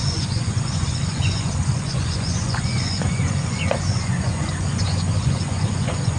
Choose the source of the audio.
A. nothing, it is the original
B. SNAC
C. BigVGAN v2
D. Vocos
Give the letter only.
D